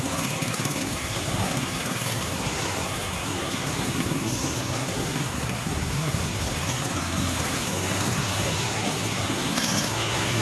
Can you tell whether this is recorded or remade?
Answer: remade